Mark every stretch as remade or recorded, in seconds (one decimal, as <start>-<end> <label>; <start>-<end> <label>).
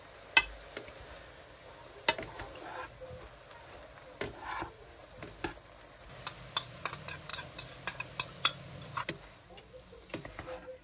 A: 0.0-10.8 recorded